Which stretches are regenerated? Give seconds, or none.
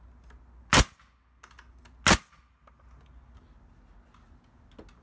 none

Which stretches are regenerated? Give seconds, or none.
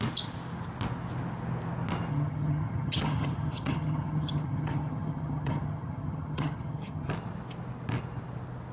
2.1-7.1 (vocoder, HiFi-GAN)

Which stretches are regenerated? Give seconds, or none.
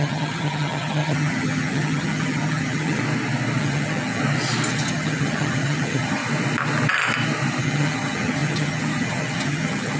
0.0-3.0 (vocoder, HiFi-GAN); 3.6-4.2; 4.7-6.2; 7.6-10.0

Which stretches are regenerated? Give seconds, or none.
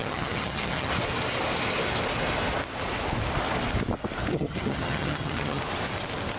0.0-0.9 (vocoder, HiFi-GAN); 4.3-5.6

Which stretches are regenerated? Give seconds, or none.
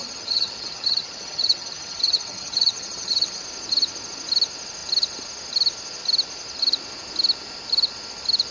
0.0-3.4 (vocoder, HiFi-GAN)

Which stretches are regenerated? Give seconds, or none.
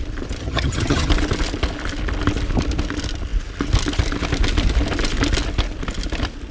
0.4-1.1 (vocoder, HiFi-GAN)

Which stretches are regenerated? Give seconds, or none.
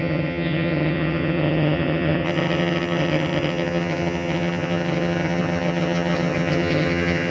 0.0-7.3 (vocoder, HiFi-GAN)